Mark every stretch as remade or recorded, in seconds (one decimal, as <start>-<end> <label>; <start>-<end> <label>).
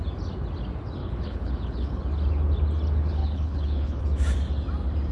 0.0-1.0 recorded; 1.0-2.0 remade; 2.0-3.2 recorded; 3.2-4.0 remade; 4.0-5.1 recorded